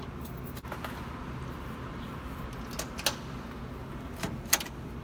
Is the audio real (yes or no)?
yes